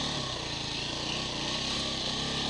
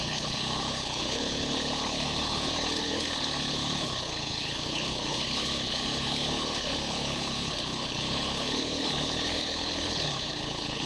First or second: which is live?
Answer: first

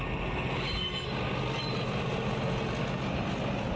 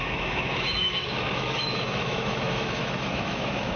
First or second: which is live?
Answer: first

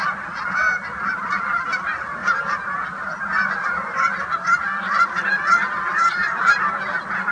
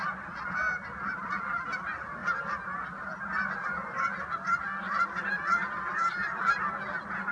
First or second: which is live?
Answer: second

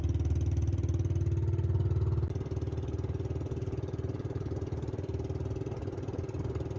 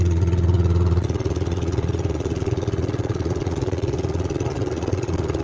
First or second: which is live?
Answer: first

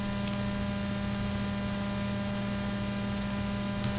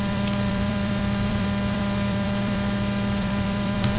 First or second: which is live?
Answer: first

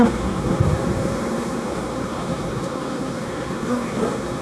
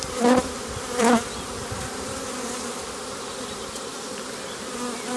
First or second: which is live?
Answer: second